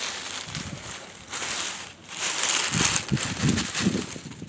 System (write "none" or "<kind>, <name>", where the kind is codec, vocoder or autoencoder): none